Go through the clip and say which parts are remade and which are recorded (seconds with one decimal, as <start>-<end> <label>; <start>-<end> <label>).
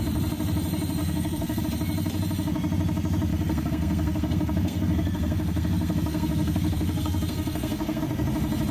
0.0-1.0 recorded; 1.0-1.6 remade; 1.6-3.3 recorded; 3.3-8.0 remade; 8.0-8.7 recorded